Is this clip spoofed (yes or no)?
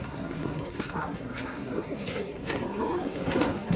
yes